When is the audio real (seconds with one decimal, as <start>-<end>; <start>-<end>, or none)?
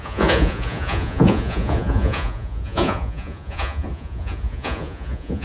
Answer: none